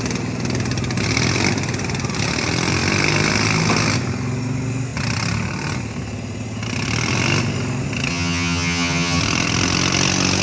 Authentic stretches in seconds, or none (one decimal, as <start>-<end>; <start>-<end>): 0.0-8.1; 9.2-10.4